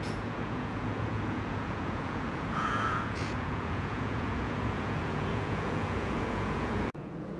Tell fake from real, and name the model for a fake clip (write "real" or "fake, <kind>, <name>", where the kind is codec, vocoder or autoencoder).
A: fake, vocoder, Vocos